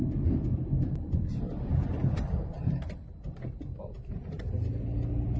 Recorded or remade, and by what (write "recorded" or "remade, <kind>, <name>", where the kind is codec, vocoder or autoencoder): recorded